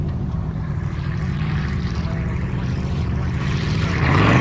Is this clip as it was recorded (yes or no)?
no